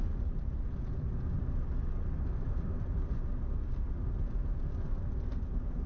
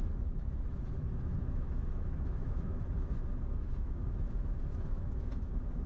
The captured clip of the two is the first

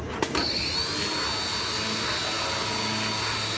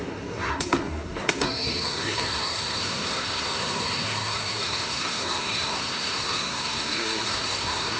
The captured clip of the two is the first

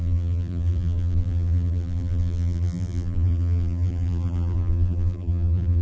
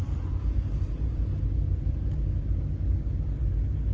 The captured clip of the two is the second